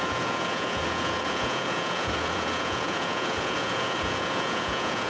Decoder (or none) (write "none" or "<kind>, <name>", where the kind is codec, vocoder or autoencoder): vocoder, Vocos